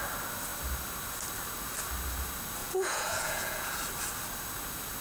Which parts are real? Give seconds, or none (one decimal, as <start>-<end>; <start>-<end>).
0.0-2.6; 3.7-5.0